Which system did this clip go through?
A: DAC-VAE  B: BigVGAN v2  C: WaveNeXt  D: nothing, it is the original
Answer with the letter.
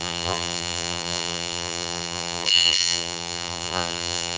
B